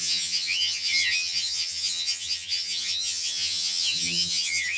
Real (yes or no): no